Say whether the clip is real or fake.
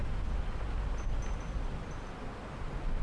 real